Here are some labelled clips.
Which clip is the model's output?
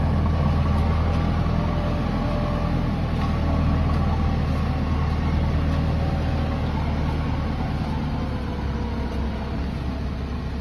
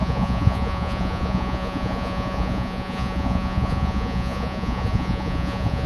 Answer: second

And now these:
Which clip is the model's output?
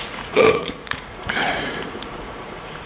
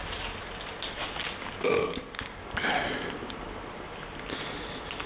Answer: first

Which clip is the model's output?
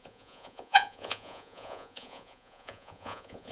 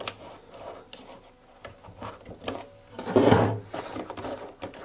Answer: first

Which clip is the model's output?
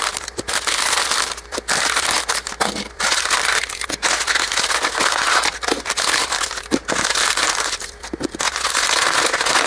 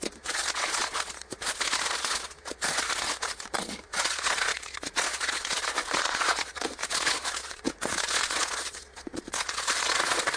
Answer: second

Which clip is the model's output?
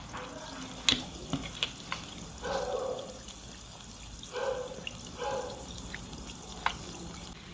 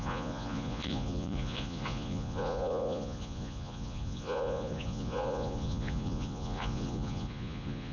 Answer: second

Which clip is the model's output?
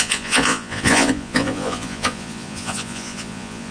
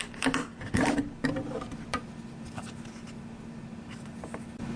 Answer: first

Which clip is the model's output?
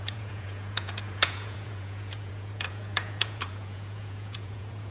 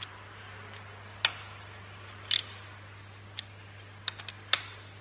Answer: first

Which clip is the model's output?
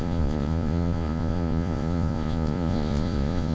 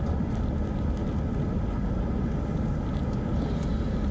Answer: first